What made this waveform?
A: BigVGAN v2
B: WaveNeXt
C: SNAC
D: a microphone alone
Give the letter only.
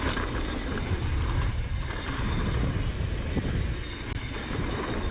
D